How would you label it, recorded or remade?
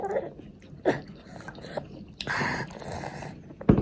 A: recorded